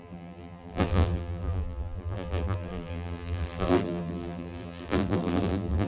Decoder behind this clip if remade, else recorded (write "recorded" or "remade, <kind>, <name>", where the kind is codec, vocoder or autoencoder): remade, vocoder, BigVGAN v2